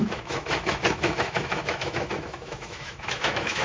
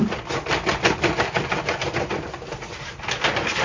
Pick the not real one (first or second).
first